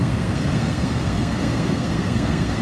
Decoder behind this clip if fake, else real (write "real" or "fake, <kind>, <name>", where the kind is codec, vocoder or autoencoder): fake, codec, SNAC